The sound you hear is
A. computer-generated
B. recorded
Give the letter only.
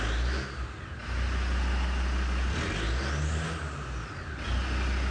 B